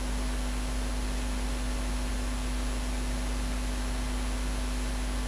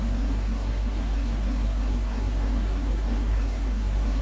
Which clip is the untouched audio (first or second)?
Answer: first